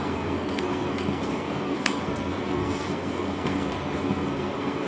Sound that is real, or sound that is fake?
fake